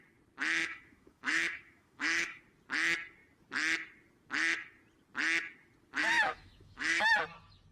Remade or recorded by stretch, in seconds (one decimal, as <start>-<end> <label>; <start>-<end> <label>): 0.0-0.6 recorded; 0.6-2.4 remade; 2.4-6.0 recorded; 6.0-7.1 remade; 7.1-7.7 recorded